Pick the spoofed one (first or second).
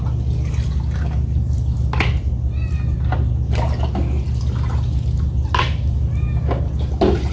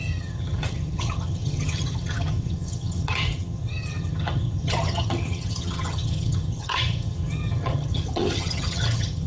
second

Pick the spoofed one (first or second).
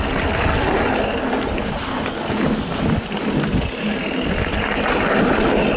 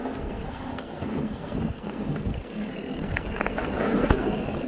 second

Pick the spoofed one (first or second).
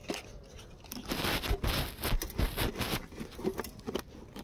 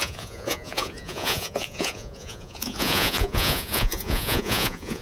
second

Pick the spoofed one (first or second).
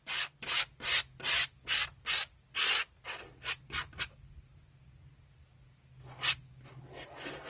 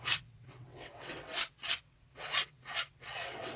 second